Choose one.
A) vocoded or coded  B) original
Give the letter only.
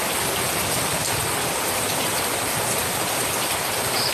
B